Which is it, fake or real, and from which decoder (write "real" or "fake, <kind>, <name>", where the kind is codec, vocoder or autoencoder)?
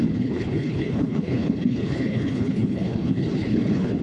fake, codec, HILCodec